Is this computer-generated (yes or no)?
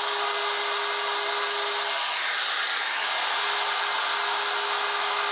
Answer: no